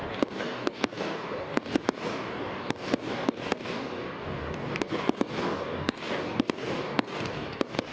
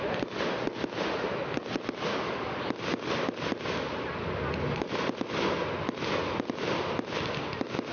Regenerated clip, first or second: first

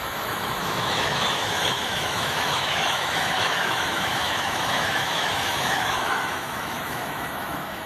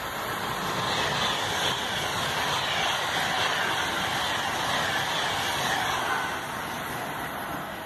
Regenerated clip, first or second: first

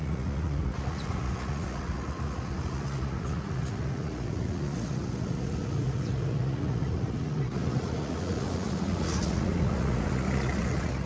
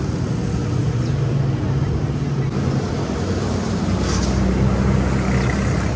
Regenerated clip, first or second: first